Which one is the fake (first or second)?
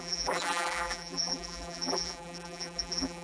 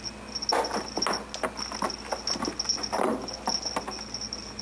first